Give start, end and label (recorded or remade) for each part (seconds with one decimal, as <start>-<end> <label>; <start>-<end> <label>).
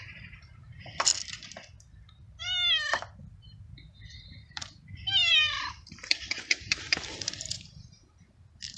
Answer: 0.0-1.1 remade; 1.1-3.2 recorded; 3.2-8.8 remade